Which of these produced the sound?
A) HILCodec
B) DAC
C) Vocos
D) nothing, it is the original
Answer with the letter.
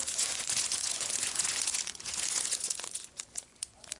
C